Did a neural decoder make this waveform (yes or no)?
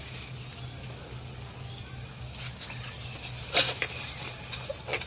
no